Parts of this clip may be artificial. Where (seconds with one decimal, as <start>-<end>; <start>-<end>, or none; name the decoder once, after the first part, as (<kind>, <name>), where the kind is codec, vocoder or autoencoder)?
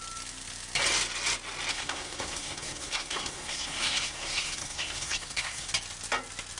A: 1.7-5.7 (codec, SNAC)